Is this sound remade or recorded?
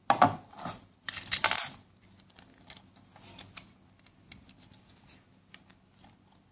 recorded